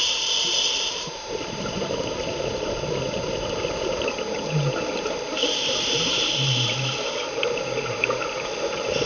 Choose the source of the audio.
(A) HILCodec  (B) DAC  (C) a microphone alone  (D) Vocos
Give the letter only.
C